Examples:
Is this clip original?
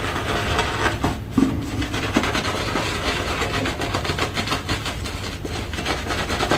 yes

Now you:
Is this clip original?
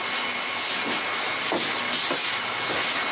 yes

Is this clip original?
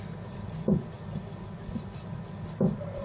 no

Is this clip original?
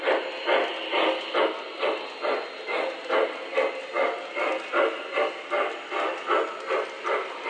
yes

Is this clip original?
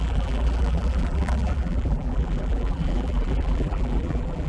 no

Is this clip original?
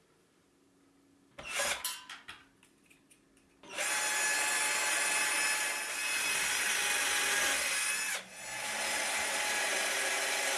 yes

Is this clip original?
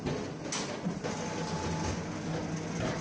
yes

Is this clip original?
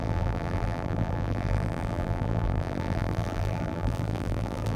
no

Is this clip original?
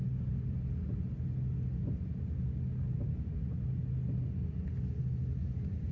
yes